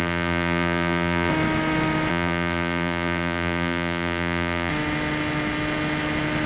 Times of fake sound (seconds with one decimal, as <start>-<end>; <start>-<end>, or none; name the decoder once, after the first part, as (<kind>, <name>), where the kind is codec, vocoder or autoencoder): 0.0-1.3 (vocoder, BigVGAN v2); 2.1-4.7